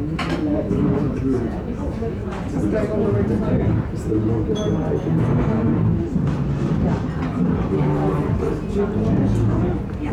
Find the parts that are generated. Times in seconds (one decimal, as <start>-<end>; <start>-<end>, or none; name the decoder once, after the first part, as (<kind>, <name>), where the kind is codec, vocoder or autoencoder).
0.0-2.2 (autoencoder, DAC-VAE); 5.1-5.7